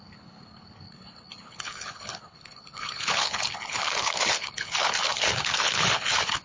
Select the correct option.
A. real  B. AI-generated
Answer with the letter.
B